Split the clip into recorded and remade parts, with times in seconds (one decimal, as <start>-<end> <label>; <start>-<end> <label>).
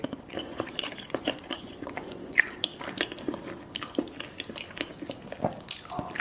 0.0-2.7 remade; 2.7-6.2 recorded